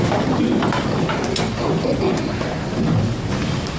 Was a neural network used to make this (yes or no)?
no